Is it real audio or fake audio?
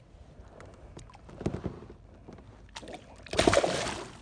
real